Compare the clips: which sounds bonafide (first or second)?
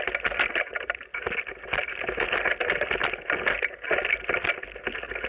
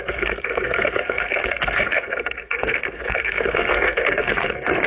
first